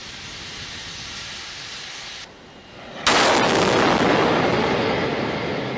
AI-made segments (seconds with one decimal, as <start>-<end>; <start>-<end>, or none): none